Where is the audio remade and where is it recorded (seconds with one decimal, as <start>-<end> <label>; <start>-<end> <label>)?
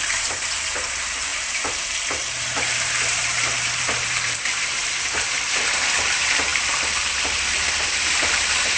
0.0-8.8 remade